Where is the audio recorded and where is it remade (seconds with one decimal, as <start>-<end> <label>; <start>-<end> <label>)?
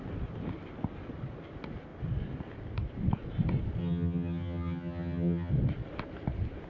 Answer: 0.0-3.8 recorded; 3.8-5.5 remade; 5.5-6.7 recorded